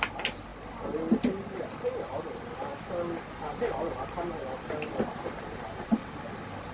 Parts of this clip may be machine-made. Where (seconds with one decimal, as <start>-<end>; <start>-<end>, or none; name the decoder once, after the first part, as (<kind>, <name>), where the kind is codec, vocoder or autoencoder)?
none